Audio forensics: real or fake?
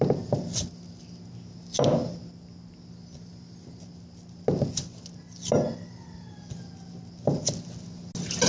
real